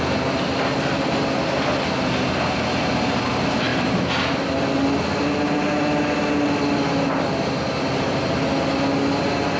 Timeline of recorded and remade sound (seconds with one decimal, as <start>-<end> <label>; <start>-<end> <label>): 0.0-9.6 recorded